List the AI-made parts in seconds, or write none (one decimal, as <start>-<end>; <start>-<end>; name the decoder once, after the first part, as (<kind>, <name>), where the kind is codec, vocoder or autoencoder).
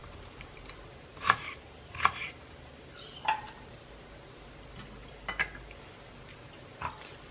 0.0-0.6 (vocoder, BigVGAN v2); 1.1-3.1; 5.0-5.9